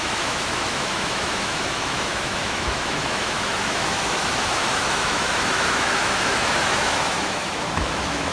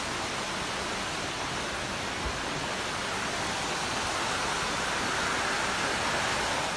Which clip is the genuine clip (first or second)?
second